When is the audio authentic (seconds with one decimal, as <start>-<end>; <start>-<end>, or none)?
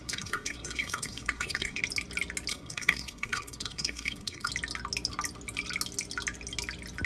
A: 1.8-2.5; 4.5-7.1